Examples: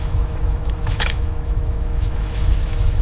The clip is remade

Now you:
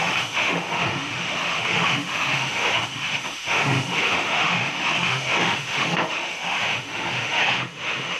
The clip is remade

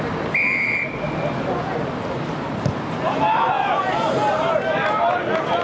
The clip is recorded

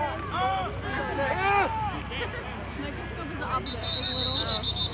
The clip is recorded